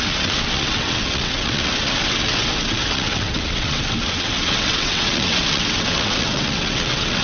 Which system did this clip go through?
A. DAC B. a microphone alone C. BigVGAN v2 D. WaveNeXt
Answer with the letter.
D